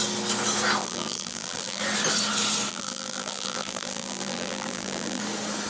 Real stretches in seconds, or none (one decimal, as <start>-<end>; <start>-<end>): 0.0-0.8; 1.8-2.7; 5.2-5.7